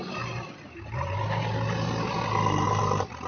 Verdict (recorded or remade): recorded